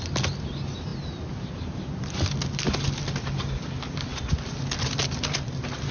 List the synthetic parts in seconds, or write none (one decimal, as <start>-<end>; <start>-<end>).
none